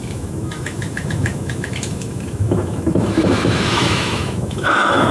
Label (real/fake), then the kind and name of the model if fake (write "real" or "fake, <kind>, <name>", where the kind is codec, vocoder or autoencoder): fake, autoencoder, DAC-VAE